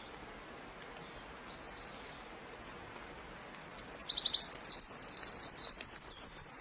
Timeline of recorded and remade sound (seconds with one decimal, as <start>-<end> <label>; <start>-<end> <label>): 0.0-6.6 recorded